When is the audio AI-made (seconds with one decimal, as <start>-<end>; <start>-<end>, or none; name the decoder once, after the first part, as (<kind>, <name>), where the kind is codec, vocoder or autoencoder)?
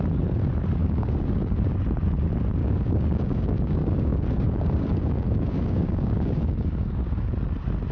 0.8-1.8 (codec, DAC); 2.6-7.3